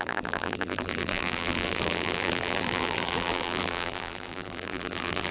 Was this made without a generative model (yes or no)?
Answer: no